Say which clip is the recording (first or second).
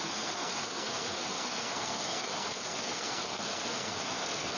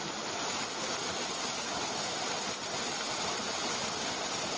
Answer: second